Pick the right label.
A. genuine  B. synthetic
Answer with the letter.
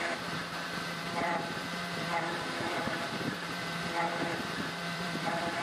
B